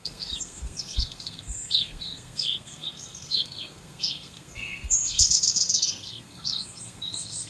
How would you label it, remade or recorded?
remade